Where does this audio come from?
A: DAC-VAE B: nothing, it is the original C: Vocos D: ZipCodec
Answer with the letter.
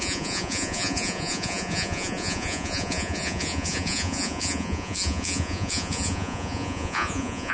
C